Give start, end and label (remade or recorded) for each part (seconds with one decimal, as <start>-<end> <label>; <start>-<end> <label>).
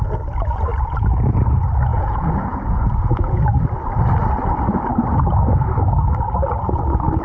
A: 0.0-1.9 recorded; 1.9-3.4 remade; 3.4-7.2 recorded